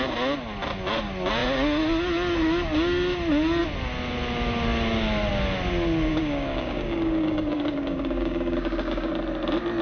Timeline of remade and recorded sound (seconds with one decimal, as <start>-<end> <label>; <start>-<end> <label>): 0.0-6.1 recorded; 6.1-9.1 remade; 9.1-9.8 recorded